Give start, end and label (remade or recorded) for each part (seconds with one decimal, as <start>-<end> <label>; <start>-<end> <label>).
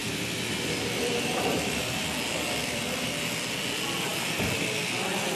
0.0-2.0 remade; 2.0-2.6 recorded; 2.6-3.2 remade; 3.2-4.1 recorded; 4.1-4.6 remade; 4.6-5.4 recorded